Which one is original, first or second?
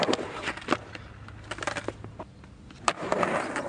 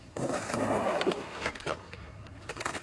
first